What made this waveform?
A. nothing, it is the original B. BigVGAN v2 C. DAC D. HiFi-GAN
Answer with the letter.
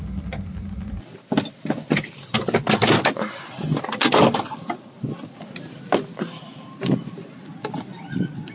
A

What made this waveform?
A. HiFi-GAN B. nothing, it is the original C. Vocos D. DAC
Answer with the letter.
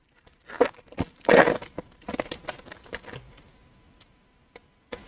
B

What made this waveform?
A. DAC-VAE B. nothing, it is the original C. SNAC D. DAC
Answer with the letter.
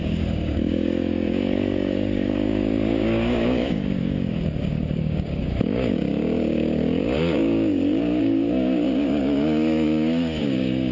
D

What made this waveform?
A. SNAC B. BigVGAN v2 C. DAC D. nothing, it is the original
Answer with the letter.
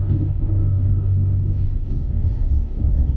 C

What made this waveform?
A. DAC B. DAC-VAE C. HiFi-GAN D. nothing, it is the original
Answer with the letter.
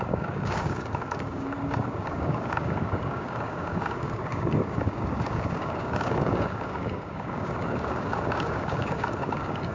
A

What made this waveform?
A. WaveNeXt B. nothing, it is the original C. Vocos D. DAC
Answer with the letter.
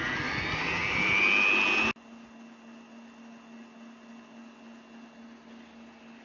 B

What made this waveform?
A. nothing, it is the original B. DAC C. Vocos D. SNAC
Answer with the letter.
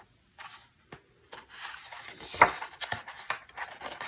A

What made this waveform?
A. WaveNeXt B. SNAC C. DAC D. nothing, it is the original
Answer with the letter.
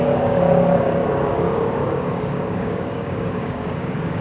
C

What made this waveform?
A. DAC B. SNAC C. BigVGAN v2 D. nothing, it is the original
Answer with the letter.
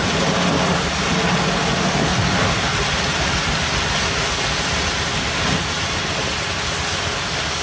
D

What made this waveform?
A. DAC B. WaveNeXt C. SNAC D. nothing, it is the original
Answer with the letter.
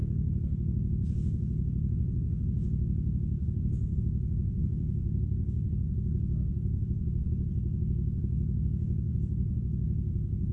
A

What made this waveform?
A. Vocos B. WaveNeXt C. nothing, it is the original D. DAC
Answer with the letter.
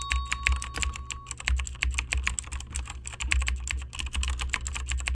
C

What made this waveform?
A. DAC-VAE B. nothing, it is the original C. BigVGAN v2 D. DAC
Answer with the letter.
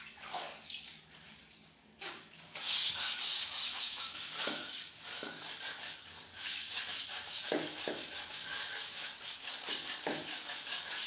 D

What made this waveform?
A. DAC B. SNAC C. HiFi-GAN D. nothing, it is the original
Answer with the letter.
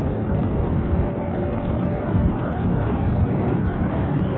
A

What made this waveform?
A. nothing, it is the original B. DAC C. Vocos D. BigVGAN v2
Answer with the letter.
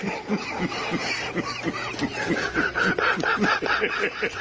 A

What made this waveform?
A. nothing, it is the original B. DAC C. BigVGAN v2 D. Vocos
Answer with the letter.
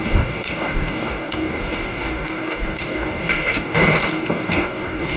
B